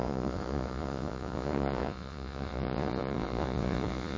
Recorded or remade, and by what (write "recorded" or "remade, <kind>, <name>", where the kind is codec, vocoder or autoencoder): remade, vocoder, Vocos